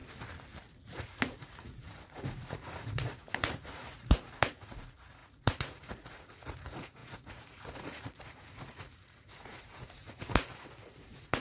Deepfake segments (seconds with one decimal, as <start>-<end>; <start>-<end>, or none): 0.8-11.4